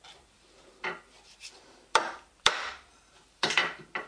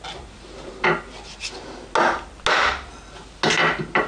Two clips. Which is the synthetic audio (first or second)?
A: first